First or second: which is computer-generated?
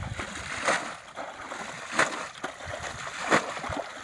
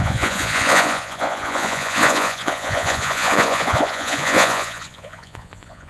second